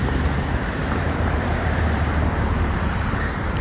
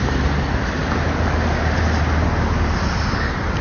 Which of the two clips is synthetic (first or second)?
first